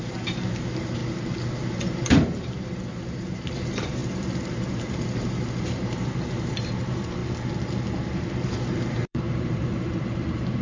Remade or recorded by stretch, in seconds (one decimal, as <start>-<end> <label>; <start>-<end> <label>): 0.0-1.0 remade; 1.0-1.6 recorded; 1.6-7.2 remade; 7.2-8.3 recorded; 8.3-10.6 remade